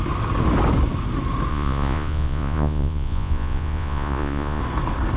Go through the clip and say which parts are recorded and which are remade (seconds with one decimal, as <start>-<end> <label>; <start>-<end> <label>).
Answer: 0.0-1.5 recorded; 1.5-4.6 remade; 4.6-5.2 recorded